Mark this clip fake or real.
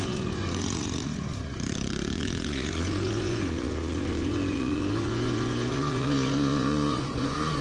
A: fake